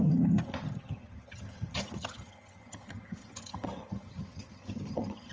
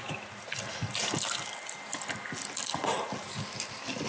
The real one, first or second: second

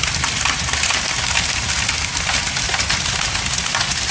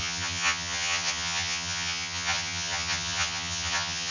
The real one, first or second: first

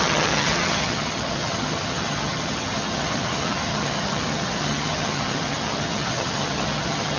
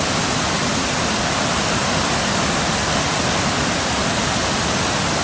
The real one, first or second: second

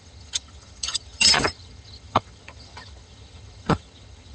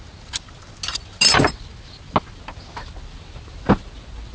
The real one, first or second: second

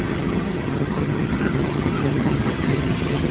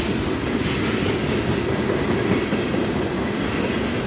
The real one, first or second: second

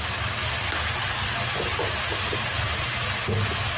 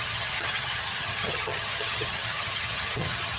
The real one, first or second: first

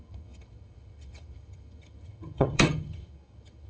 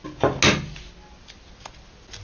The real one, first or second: second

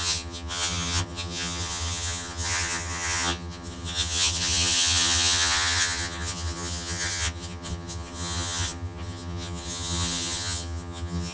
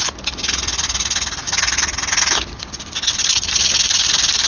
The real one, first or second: second